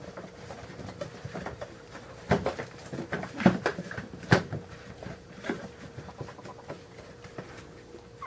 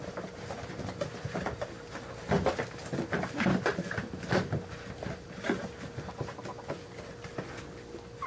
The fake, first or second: first